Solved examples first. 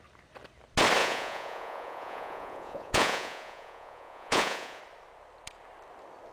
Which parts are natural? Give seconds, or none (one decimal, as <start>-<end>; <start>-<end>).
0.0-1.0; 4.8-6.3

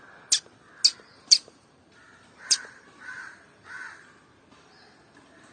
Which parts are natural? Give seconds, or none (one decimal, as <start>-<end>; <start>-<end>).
0.0-0.9; 4.2-5.5

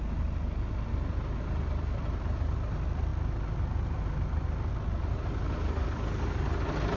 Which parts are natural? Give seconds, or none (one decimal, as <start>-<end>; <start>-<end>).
0.0-7.0